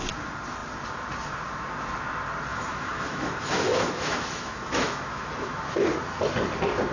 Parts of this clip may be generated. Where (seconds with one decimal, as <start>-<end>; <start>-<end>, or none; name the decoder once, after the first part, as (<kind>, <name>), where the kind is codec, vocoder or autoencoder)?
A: 2.5-5.6 (autoencoder, DAC-VAE)